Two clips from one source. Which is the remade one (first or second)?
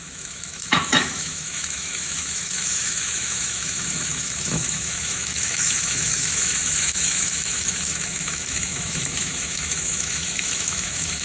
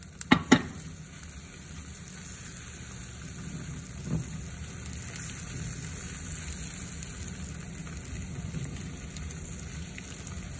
first